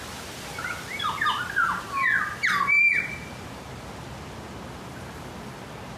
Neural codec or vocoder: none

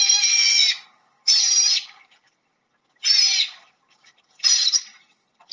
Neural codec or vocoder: none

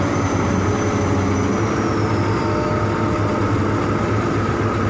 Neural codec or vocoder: none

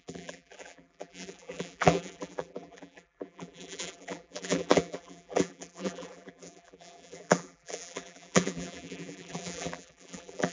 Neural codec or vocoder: vocoder, BigVGAN v2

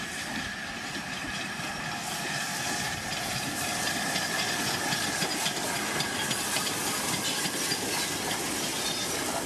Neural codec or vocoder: none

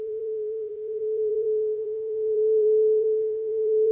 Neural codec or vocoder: vocoder, BigVGAN v2